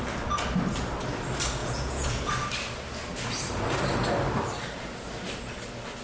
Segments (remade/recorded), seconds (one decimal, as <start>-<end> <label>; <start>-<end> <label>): 0.0-1.6 recorded; 1.6-2.3 remade; 2.3-6.0 recorded